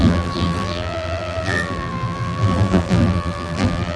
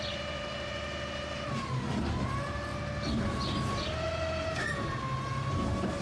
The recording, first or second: second